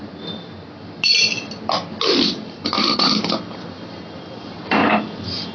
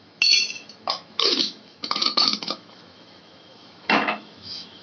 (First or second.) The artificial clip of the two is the second